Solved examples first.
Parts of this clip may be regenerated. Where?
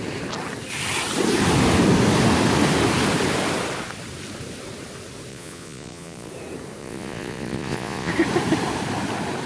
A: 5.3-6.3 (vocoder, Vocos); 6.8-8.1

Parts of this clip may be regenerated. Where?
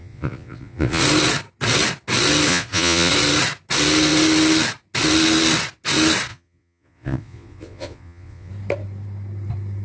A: 0.0-1.0 (vocoder, Vocos); 2.5-3.1; 6.3-8.5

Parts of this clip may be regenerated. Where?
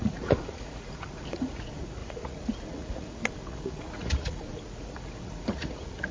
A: 0.0-6.1 (vocoder, Vocos)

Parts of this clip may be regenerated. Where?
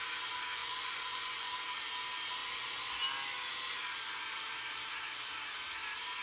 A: 0.6-1.5 (vocoder, Vocos)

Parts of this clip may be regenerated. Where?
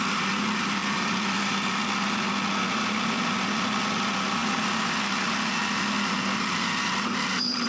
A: none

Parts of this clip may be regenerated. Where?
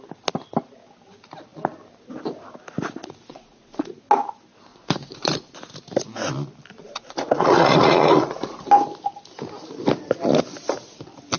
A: 3.3-3.9 (vocoder, Vocos); 4.7-5.5; 6.8-8.7